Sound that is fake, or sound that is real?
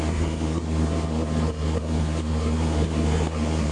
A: fake